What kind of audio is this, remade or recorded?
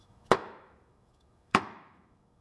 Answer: remade